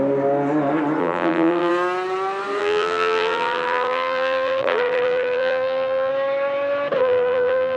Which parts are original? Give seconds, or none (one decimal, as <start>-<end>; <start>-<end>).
0.0-1.0; 1.7-2.6; 6.1-7.0